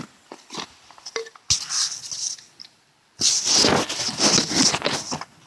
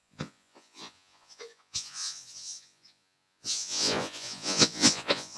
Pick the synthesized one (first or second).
second